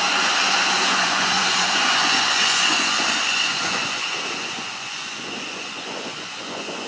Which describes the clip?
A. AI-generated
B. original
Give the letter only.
A